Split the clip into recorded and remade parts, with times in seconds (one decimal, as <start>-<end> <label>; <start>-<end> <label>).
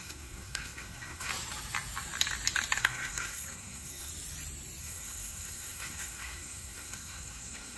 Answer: 0.0-1.3 remade; 1.3-2.8 recorded; 2.8-4.1 remade; 4.1-4.8 recorded; 4.8-7.8 remade